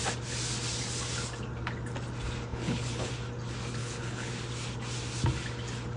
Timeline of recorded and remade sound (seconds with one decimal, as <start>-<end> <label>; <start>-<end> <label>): 0.0-2.5 recorded; 2.5-3.1 remade; 3.1-3.8 recorded; 3.8-4.3 remade; 4.3-6.0 recorded